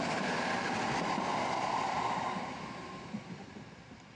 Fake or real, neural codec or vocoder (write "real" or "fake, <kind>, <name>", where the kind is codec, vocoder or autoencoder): fake, vocoder, BigVGAN v2